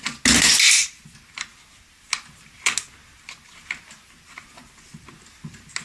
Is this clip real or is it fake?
real